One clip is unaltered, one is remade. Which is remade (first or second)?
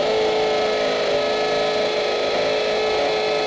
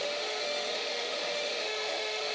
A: second